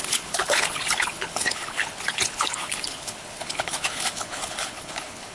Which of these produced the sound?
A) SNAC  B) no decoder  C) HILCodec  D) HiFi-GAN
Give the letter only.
C